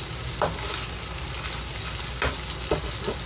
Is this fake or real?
real